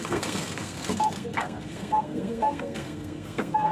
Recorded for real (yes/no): no